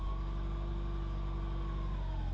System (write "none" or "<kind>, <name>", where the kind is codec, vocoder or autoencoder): none